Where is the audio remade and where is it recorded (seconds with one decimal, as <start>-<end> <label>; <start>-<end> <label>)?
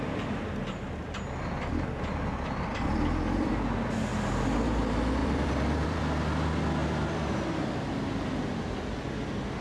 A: 0.0-2.7 recorded; 2.7-3.5 remade; 3.5-5.2 recorded; 5.2-6.0 remade; 6.0-6.8 recorded; 6.8-7.7 remade; 7.7-9.6 recorded